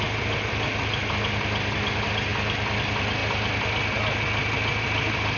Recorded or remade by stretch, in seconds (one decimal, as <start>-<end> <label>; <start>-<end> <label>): 0.0-5.4 recorded